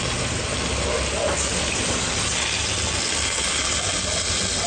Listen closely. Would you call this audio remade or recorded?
recorded